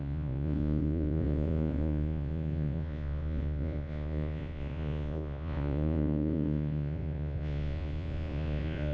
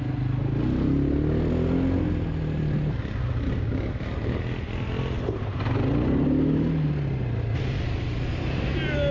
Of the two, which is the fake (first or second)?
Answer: first